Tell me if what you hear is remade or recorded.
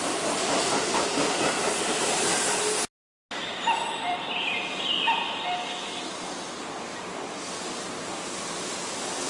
recorded